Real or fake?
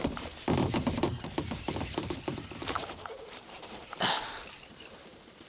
fake